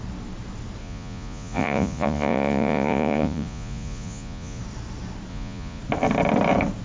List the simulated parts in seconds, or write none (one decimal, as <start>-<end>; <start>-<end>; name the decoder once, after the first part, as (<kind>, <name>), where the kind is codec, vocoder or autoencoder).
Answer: 0.8-4.6 (vocoder, Vocos); 5.3-5.8